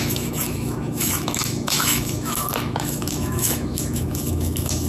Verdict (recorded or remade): remade